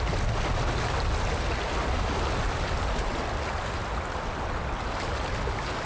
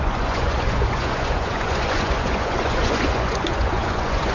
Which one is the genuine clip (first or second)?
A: first